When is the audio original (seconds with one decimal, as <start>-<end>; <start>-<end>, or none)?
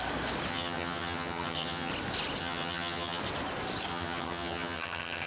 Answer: 0.0-0.5; 1.9-2.4; 3.2-3.9